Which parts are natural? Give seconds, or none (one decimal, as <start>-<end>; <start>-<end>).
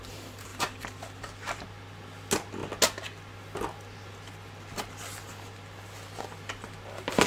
0.0-0.5; 1.6-7.3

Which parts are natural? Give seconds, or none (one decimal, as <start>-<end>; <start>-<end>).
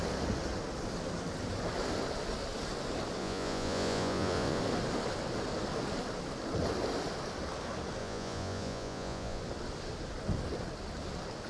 0.0-3.2; 4.6-8.0; 9.4-11.5